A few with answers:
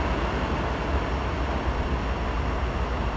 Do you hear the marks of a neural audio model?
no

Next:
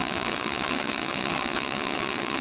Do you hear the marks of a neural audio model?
yes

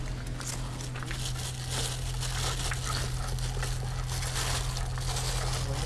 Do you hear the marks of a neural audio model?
no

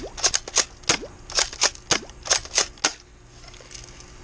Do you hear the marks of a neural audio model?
no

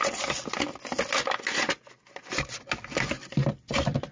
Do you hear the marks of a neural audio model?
no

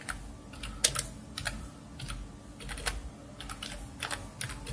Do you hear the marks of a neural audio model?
no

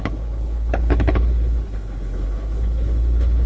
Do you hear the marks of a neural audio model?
yes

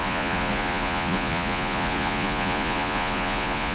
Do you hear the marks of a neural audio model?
yes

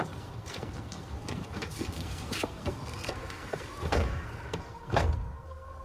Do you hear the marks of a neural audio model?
yes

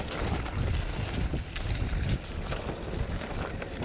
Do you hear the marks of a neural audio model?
no